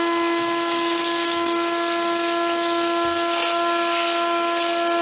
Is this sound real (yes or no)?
yes